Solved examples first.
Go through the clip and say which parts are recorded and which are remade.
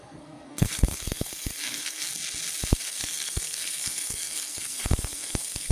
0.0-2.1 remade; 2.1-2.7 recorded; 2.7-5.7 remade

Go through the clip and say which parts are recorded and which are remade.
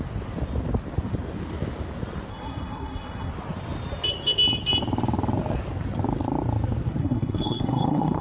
0.0-2.3 recorded; 2.3-3.3 remade; 3.3-7.0 recorded; 7.0-8.2 remade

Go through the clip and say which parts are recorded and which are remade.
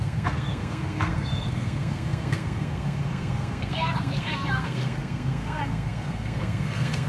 0.0-7.1 remade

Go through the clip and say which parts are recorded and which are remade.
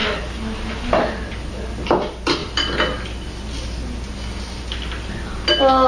0.0-5.9 recorded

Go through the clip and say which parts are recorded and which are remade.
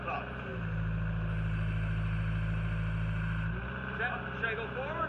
0.0-5.1 recorded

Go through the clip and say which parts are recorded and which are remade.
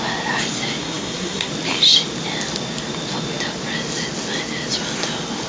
0.0-0.8 recorded; 0.8-1.5 remade; 1.5-5.5 recorded